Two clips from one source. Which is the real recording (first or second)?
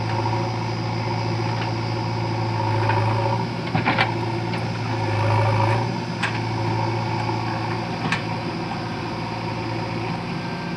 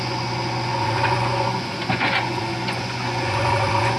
first